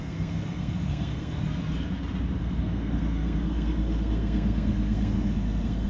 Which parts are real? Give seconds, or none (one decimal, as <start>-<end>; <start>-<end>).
1.4-2.4